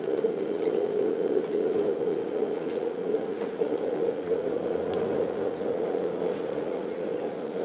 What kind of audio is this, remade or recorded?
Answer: remade